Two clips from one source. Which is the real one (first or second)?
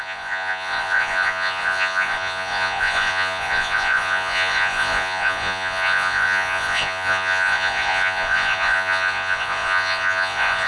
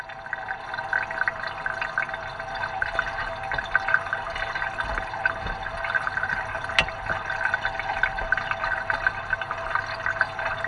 second